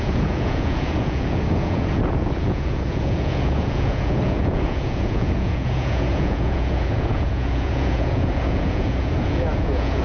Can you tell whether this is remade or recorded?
remade